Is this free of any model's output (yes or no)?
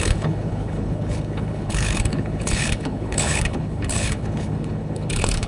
no